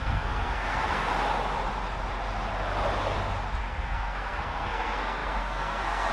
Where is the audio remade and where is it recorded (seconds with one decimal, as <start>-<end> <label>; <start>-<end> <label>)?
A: 0.0-1.1 remade; 1.1-3.6 recorded; 3.6-6.1 remade